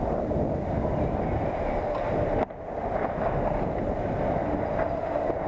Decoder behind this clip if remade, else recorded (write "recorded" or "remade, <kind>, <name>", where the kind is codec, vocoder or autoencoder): recorded